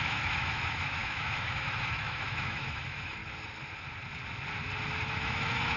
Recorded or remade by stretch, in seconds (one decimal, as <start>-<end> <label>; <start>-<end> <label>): 0.0-3.2 remade; 3.2-5.1 recorded; 5.1-5.8 remade